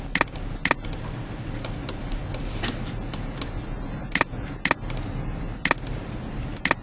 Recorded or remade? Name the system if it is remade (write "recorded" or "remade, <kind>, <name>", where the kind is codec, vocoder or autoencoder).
recorded